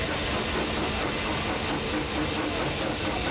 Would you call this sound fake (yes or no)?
no